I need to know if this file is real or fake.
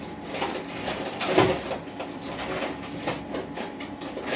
real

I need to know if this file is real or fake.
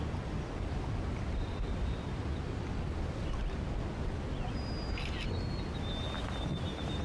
real